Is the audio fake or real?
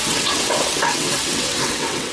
fake